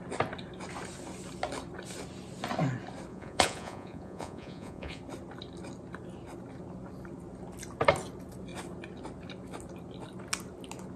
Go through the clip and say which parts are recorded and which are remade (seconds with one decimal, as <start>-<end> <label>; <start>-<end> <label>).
0.0-3.1 recorded; 3.1-5.0 remade; 5.0-11.0 recorded

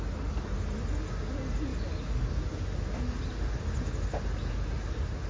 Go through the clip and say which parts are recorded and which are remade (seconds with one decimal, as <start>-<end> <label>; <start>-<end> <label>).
0.0-5.3 recorded

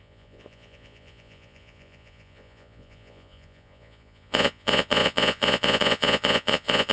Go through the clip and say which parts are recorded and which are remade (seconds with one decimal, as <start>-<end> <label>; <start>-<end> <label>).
0.0-6.9 remade

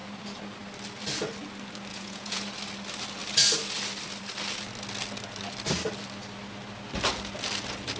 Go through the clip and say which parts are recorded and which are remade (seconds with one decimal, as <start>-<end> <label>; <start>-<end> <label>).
0.0-1.9 recorded; 1.9-2.4 remade; 2.4-8.0 recorded

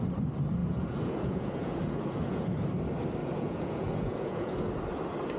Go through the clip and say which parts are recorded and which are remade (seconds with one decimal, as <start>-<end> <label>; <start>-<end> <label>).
0.0-0.6 recorded; 0.6-2.6 remade; 2.6-3.2 recorded; 3.2-4.5 remade; 4.5-5.4 recorded

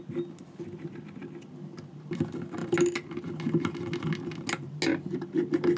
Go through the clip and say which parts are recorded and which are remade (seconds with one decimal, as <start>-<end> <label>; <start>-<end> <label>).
0.0-5.8 recorded